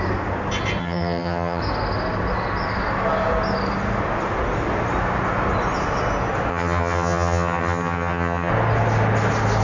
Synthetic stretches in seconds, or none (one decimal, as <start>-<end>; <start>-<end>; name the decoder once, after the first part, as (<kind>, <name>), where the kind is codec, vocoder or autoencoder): 0.8-1.6 (vocoder, HiFi-GAN); 6.5-8.5